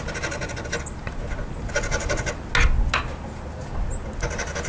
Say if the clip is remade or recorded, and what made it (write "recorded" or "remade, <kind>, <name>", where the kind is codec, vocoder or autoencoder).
recorded